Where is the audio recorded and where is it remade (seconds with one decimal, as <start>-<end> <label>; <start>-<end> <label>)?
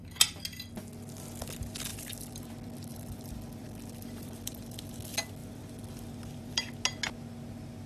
0.0-1.9 recorded; 1.9-2.5 remade; 2.5-2.9 recorded; 2.9-4.8 remade; 4.8-5.4 recorded; 5.4-6.7 remade; 6.7-7.9 recorded